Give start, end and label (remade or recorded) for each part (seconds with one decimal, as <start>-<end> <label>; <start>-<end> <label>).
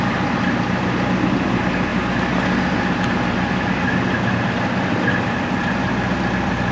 0.0-6.7 recorded